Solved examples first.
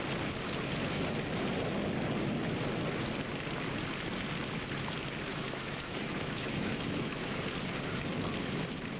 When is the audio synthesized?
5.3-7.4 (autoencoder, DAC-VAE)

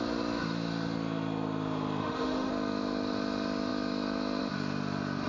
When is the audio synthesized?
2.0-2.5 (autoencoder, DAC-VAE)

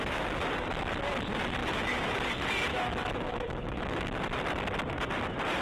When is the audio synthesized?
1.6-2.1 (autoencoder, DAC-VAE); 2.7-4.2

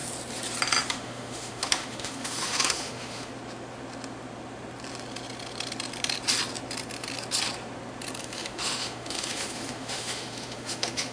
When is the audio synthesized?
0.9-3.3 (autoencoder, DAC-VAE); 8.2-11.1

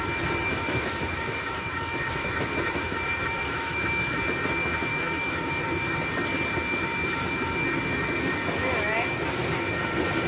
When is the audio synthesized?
0.4-4.2 (autoencoder, DAC-VAE); 4.9-5.5